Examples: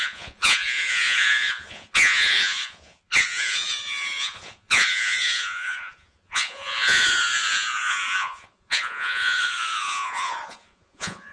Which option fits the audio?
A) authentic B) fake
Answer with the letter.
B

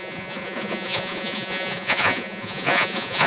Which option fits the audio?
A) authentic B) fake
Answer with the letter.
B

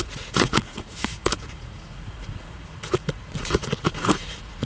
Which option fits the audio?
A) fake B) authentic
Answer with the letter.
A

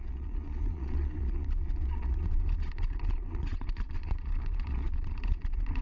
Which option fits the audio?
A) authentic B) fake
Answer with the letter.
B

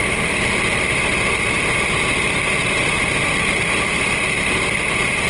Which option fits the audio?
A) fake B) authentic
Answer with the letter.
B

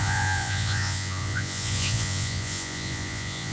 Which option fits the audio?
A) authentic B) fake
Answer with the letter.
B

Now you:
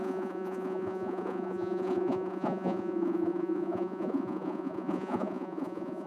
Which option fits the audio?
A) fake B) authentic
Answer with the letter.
A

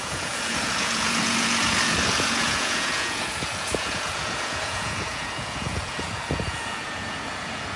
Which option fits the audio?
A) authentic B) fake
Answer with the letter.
B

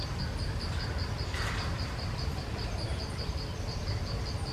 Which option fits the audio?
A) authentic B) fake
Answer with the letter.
A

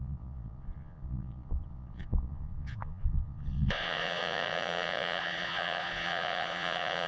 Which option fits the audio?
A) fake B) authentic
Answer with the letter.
A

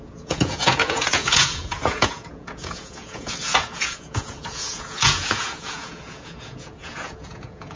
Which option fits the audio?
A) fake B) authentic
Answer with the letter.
A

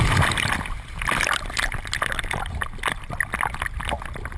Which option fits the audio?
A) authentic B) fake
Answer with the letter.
A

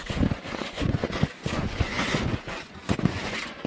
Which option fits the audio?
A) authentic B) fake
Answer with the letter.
B